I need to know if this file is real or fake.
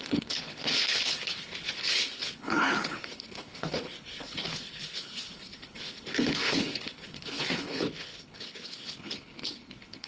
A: fake